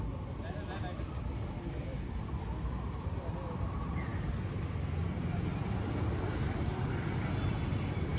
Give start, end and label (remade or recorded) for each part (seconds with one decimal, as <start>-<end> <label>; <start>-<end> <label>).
0.0-8.2 recorded